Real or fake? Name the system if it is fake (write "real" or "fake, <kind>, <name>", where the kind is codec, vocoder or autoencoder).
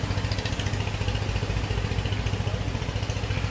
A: real